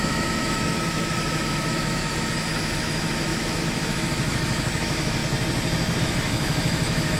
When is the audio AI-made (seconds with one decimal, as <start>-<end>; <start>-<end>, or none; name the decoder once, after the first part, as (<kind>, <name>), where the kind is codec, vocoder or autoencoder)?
0.0-2.0 (autoencoder, DAC-VAE); 2.5-5.2; 6.0-7.2